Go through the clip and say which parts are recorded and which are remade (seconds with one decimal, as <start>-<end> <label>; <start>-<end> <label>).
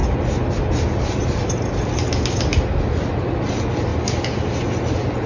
0.0-5.3 recorded